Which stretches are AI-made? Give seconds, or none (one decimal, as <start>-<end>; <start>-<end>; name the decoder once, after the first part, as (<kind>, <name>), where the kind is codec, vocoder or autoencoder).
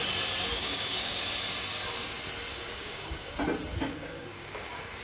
0.5-1.2 (codec, DAC); 2.5-3.3; 3.7-5.0